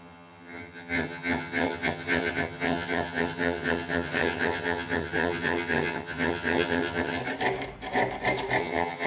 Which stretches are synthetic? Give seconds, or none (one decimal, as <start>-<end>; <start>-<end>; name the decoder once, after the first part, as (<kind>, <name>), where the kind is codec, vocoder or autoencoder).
0.0-7.2 (vocoder, HiFi-GAN); 8.6-9.1